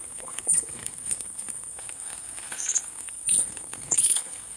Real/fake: fake